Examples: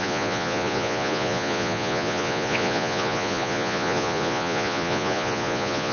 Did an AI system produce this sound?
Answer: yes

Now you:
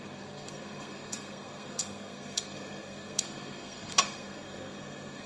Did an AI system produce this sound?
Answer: yes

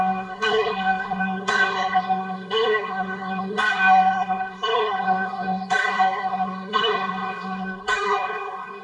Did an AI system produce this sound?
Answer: yes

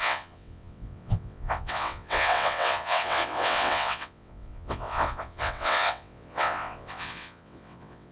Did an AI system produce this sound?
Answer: yes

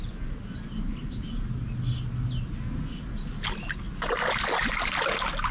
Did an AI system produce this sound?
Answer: no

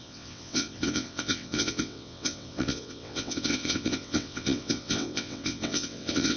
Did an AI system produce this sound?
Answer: yes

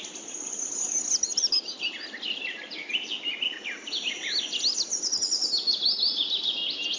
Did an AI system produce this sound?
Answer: no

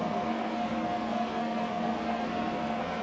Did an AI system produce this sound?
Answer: yes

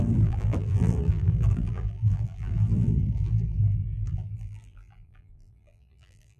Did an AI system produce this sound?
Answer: yes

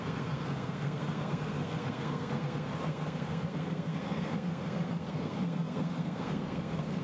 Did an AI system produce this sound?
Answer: yes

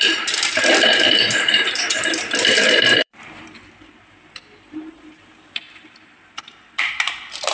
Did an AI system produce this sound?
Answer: yes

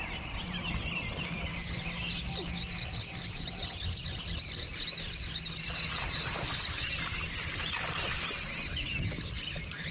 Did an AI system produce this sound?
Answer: no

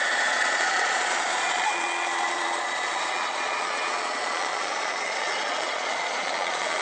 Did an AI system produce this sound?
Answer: yes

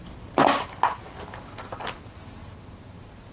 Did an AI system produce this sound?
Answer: no